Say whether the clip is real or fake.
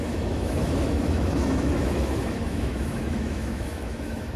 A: fake